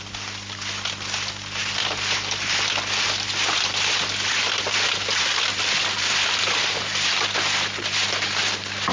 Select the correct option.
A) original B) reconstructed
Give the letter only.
A